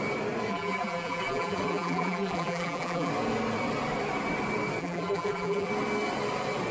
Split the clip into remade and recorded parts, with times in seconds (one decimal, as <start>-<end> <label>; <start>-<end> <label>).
0.0-0.5 recorded; 0.5-3.1 remade; 3.1-4.8 recorded; 4.8-5.7 remade; 5.7-6.7 recorded